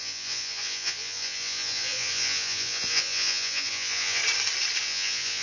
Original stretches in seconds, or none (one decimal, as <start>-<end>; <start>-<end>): 4.2-4.8